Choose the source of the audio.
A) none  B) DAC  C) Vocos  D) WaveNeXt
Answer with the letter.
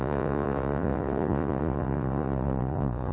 C